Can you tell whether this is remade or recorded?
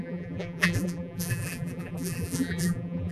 remade